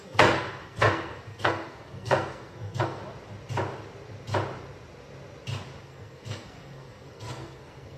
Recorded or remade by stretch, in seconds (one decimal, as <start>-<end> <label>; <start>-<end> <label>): 0.0-3.0 remade; 3.0-5.8 recorded; 5.8-8.0 remade